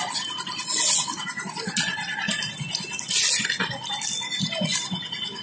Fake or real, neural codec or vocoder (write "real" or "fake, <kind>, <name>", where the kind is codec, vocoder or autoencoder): real